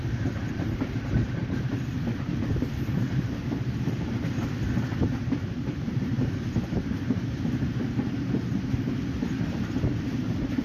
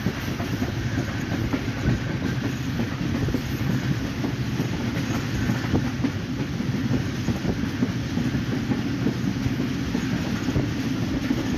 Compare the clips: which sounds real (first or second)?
second